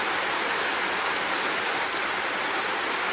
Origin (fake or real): real